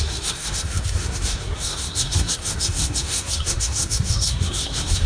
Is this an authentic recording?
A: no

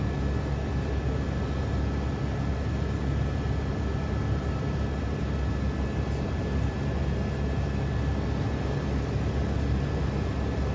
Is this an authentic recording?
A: yes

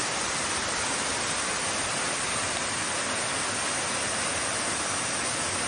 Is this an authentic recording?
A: yes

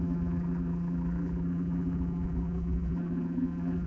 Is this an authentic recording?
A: no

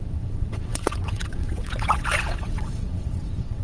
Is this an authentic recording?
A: no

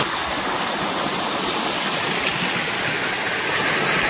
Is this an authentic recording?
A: yes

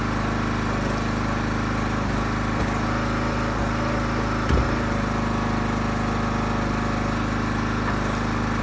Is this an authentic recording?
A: yes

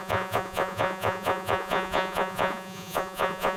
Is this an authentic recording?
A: no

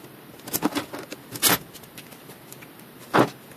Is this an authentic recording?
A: yes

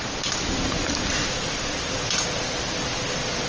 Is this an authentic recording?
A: yes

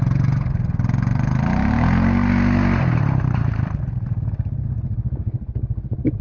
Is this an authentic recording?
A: yes